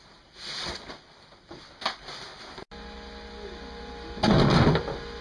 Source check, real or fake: real